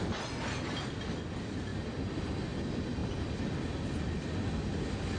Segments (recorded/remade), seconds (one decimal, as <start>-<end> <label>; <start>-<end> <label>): 0.0-1.7 recorded; 1.7-2.2 remade; 2.2-5.2 recorded